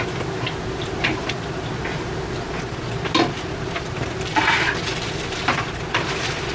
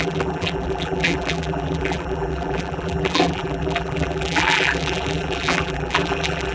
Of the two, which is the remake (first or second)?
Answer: second